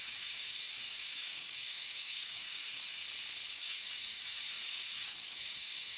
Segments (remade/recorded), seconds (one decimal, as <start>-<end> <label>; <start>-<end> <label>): 0.0-3.0 remade; 3.0-3.5 recorded; 3.5-6.0 remade